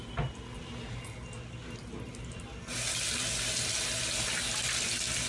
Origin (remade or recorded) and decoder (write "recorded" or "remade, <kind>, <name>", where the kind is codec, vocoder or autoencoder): recorded